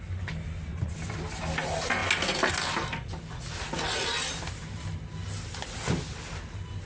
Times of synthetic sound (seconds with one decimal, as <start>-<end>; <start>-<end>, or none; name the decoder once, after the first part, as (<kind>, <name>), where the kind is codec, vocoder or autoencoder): none